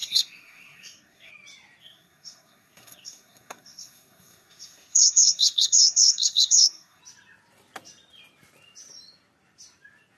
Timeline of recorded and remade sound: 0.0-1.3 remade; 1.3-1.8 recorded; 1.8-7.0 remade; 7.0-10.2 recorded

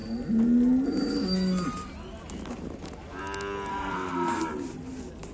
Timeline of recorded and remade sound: 0.0-3.7 recorded; 3.7-4.4 remade; 4.4-5.3 recorded

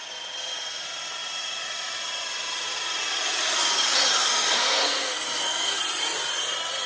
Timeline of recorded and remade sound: 0.0-4.2 recorded; 4.2-5.8 remade; 5.8-6.9 recorded

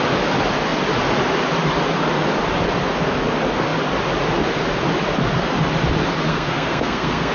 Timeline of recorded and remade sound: 0.0-6.3 recorded; 6.3-7.3 remade

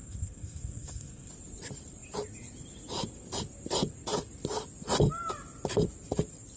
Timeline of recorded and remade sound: 0.0-1.3 remade; 1.3-6.6 recorded